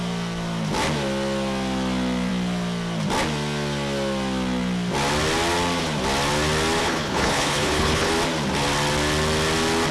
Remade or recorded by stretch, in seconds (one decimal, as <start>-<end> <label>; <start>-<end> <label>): 0.0-6.8 recorded; 6.8-8.1 remade; 8.1-9.9 recorded